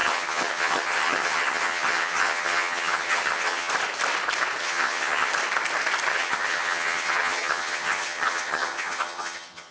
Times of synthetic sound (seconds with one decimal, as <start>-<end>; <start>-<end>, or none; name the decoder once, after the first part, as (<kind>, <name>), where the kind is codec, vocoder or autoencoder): 0.0-3.7 (vocoder, HiFi-GAN); 4.6-5.3; 6.1-9.7